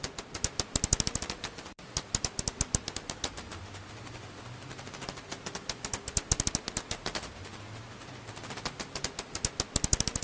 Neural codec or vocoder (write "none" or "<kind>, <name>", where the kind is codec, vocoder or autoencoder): none